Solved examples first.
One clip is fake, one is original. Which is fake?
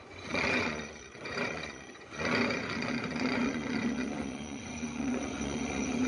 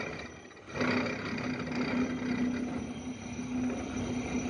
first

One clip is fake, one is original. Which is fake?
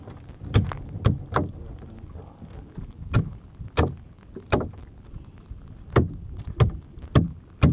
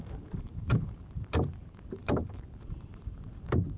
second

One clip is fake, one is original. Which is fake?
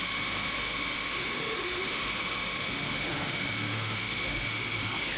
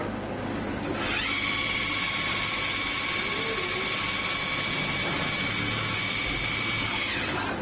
first